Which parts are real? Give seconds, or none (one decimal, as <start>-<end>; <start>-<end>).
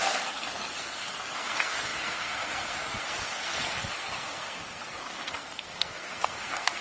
none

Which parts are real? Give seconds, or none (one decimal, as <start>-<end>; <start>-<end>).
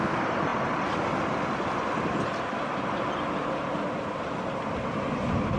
0.0-5.6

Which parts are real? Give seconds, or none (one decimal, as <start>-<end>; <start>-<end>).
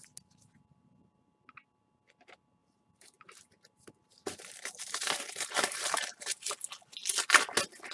0.0-2.6; 6.5-7.9